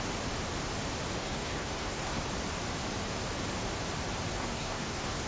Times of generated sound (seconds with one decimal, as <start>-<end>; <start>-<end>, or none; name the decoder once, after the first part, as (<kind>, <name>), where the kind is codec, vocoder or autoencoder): 1.2-2.2 (codec, SNAC); 4.3-5.3